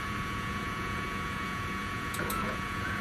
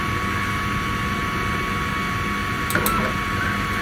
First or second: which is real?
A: second